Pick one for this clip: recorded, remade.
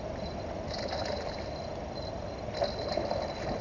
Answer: recorded